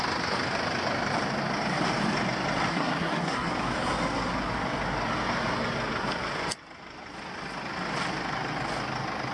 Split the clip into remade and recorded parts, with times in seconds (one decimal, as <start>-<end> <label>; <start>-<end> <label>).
0.0-2.7 recorded; 2.7-3.5 remade; 3.5-9.3 recorded